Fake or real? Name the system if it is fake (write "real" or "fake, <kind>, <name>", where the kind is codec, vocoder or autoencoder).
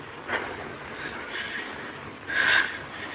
real